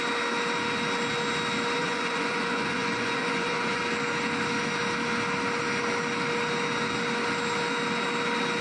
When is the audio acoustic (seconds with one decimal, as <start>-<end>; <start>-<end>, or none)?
0.0-1.8; 3.8-8.6